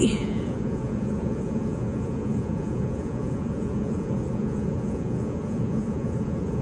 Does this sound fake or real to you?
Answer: fake